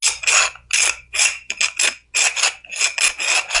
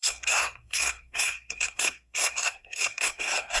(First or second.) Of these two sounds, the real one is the first